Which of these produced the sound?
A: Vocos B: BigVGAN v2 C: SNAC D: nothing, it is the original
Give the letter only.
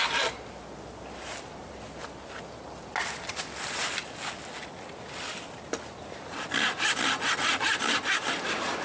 D